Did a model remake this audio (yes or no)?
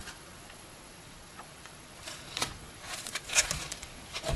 yes